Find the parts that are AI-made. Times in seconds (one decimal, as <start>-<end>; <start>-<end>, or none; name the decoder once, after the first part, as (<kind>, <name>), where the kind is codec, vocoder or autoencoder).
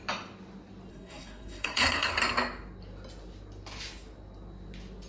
0.9-2.1 (codec, SNAC)